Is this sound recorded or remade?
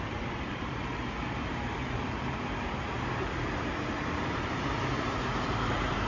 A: remade